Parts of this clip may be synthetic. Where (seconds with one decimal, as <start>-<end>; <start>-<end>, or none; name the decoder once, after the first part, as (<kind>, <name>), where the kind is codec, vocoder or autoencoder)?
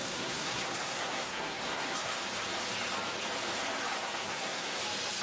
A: 0.0-2.1 (codec, SNAC); 4.2-4.8